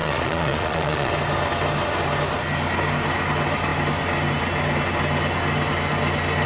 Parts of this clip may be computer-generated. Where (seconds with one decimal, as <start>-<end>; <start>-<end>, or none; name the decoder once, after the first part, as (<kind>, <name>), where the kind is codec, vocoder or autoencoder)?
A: 0.0-1.1 (vocoder, Vocos)